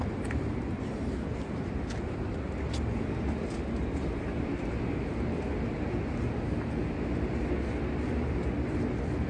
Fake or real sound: fake